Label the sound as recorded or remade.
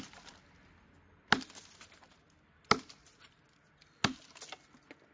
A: recorded